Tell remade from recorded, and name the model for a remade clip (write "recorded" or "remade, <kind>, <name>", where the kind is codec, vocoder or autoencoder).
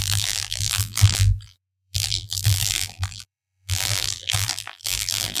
remade, vocoder, BigVGAN v2